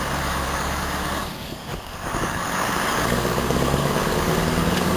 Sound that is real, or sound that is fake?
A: fake